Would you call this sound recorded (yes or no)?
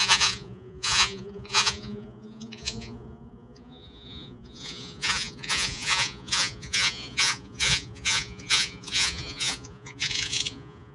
no